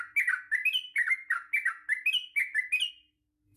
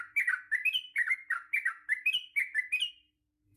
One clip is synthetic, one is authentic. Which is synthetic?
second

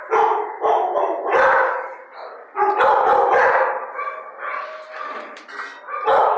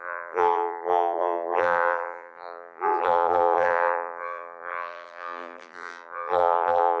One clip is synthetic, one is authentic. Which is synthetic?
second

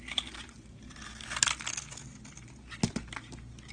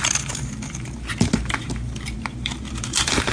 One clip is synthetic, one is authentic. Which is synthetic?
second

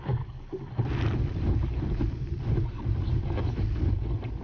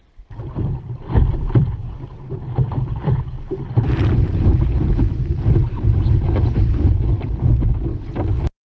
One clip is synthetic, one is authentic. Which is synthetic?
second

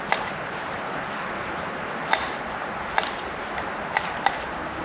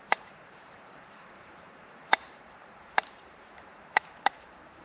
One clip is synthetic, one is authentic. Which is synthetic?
second